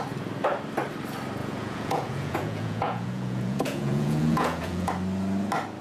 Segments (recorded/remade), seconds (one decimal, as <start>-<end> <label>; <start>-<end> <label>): 0.0-1.4 recorded; 1.4-4.9 remade; 4.9-5.8 recorded